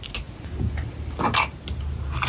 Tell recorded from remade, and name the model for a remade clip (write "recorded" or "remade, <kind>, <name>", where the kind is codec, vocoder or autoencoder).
recorded